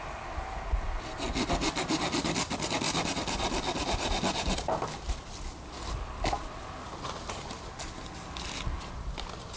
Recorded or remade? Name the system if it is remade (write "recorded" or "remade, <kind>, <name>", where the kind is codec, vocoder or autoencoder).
recorded